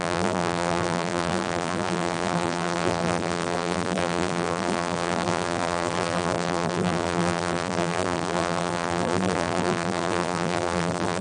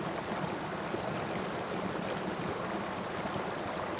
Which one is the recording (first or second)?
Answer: second